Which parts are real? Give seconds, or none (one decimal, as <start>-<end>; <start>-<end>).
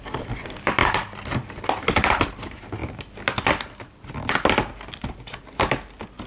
0.0-6.3